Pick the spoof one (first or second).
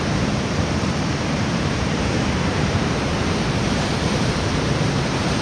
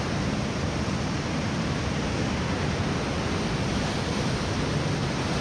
first